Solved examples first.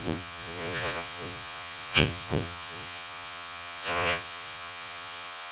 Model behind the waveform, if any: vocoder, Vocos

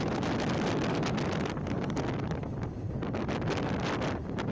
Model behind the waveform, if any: none